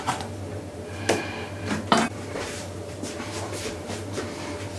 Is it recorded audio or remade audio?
remade